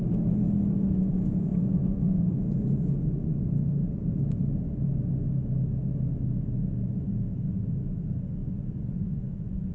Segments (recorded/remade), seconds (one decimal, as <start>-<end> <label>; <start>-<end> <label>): 0.0-1.5 recorded; 1.5-3.4 remade; 3.4-8.4 recorded; 8.4-9.7 remade